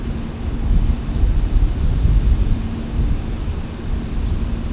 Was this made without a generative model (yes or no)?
yes